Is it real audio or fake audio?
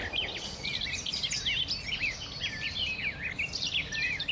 real